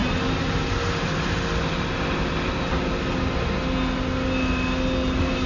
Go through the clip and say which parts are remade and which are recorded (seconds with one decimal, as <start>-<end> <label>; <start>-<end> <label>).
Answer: 0.0-5.5 recorded